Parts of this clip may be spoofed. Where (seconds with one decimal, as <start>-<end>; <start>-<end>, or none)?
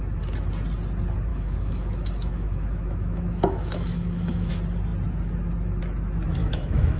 1.3-4.5; 6.4-7.0